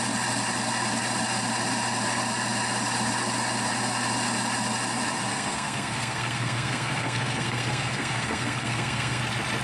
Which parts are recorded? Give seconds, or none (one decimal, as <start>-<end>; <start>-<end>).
0.0-5.3; 9.2-9.6